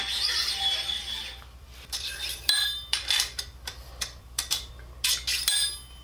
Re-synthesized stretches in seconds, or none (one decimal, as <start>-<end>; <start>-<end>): 1.1-4.7